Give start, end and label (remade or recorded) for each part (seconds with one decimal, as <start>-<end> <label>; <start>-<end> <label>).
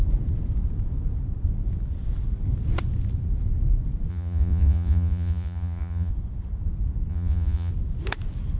0.0-4.1 recorded; 4.1-6.1 remade; 6.1-7.1 recorded; 7.1-7.7 remade; 7.7-8.6 recorded